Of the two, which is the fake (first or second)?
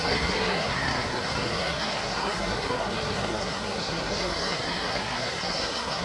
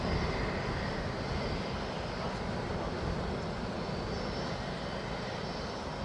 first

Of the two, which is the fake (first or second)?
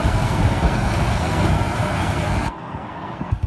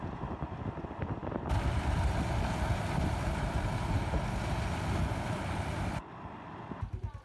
first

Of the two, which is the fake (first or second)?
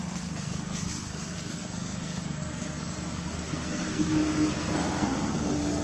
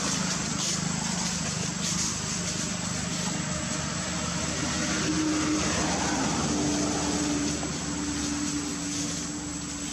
first